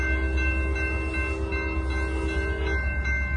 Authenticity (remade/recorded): recorded